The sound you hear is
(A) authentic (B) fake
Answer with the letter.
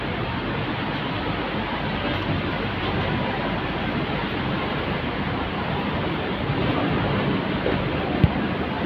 A